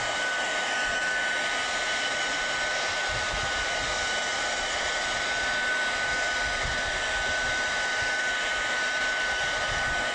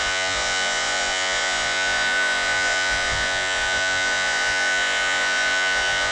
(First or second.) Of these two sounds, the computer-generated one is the second